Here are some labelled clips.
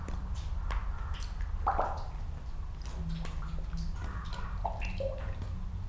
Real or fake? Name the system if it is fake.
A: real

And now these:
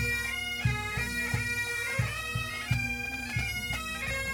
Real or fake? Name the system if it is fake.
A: real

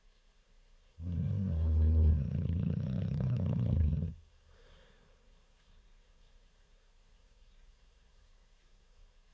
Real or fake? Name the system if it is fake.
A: fake, codec, SNAC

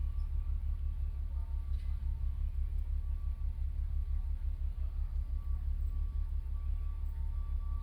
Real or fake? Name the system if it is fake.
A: real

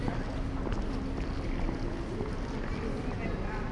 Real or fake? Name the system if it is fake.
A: real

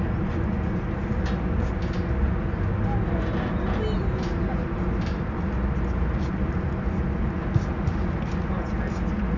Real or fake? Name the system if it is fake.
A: real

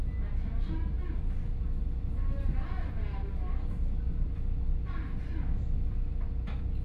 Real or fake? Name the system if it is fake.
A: real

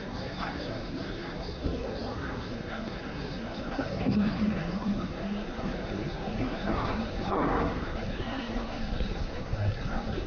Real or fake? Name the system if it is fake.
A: fake, codec, SNAC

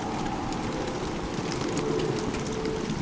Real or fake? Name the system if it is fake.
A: real